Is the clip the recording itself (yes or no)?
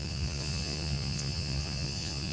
no